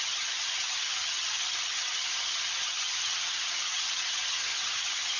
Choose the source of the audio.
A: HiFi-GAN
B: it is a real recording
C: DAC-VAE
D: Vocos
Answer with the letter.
A